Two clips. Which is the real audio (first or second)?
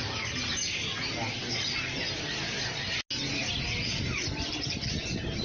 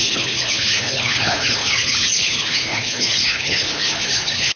first